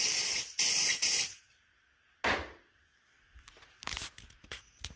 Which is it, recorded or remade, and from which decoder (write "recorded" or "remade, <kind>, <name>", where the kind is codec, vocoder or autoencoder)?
recorded